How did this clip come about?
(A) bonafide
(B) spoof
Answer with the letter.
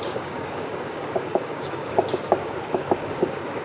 B